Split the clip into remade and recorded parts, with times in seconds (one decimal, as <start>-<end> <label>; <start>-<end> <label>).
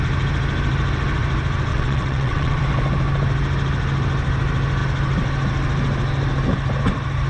0.0-1.7 recorded; 1.7-2.6 remade; 2.6-7.3 recorded